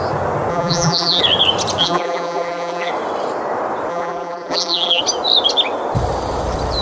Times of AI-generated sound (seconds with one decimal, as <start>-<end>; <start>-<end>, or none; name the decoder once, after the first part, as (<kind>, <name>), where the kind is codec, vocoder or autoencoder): 0.5-1.2 (vocoder, BigVGAN v2); 1.8-2.9; 3.9-5.0

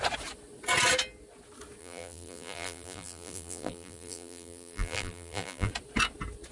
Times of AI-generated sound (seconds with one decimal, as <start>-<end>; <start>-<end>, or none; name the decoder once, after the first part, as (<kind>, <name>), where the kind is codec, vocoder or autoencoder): 1.8-5.7 (vocoder, BigVGAN v2)

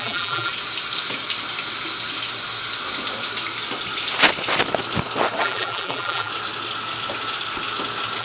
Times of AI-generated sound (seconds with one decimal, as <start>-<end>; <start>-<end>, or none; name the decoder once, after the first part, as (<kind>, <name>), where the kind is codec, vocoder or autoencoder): 0.0-0.5 (vocoder, BigVGAN v2); 5.4-6.3

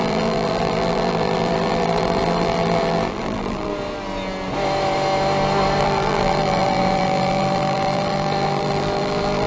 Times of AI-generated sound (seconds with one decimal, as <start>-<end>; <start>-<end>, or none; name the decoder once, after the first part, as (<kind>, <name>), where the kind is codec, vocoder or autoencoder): 0.0-3.7 (vocoder, BigVGAN v2); 5.8-9.5

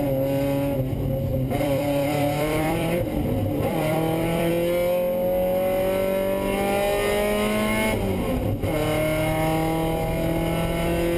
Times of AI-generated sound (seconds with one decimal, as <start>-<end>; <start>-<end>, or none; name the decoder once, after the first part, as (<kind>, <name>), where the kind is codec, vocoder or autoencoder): 1.3-4.5 (vocoder, BigVGAN v2)

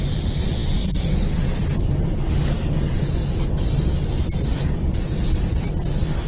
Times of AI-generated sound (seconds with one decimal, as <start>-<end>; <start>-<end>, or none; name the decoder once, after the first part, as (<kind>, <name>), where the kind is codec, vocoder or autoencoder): none